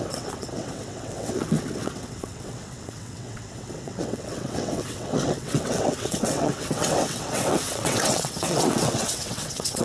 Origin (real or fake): fake